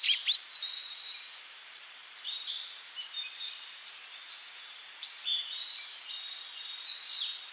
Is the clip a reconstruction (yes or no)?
yes